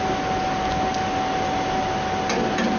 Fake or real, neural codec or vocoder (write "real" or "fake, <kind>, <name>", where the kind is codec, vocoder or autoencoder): real